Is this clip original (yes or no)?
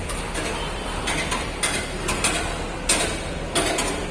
yes